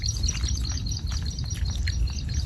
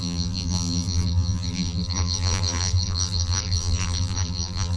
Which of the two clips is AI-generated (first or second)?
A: second